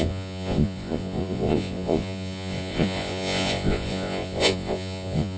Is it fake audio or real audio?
fake